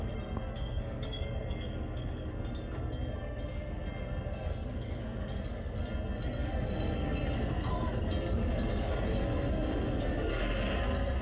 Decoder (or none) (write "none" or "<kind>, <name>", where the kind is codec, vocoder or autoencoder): codec, SNAC